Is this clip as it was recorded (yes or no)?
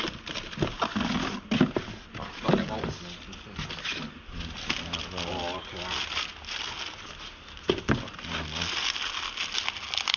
yes